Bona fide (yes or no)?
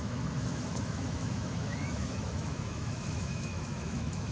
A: no